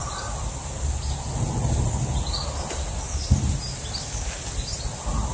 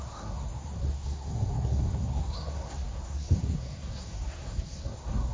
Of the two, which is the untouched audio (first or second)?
first